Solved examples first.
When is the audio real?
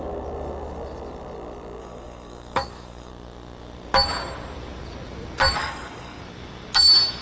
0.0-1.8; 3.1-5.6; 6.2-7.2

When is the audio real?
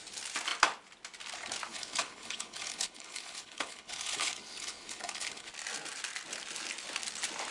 0.0-1.7; 5.5-7.5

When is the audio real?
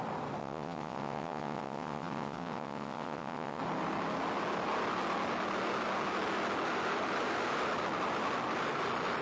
0.0-0.4; 3.6-9.2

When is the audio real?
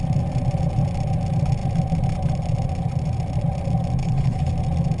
0.0-4.0; 4.5-5.0